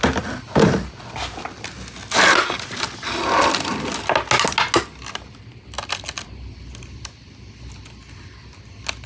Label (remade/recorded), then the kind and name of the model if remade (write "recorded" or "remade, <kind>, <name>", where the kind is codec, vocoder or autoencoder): recorded